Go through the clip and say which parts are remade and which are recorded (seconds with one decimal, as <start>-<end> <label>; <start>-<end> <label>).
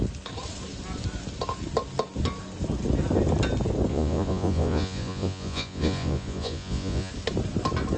0.0-3.9 recorded; 3.9-7.1 remade; 7.1-8.0 recorded